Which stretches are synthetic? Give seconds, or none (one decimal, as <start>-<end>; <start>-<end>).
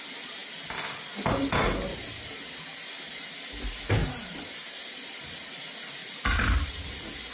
4.0-4.8; 6.0-6.7